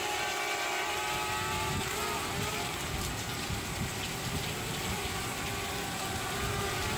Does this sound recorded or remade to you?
recorded